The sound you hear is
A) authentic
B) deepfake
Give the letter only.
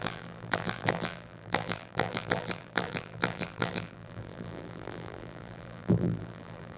B